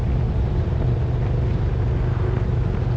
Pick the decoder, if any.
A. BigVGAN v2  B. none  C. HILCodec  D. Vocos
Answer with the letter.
B